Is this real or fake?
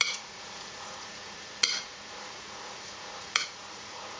fake